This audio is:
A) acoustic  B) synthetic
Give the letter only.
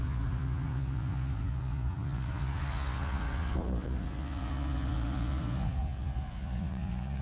B